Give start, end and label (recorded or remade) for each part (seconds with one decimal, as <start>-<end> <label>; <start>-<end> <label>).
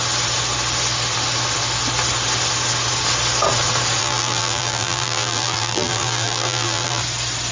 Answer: 0.0-4.0 recorded; 4.0-7.0 remade; 7.0-7.5 recorded